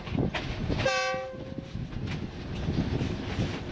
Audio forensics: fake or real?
real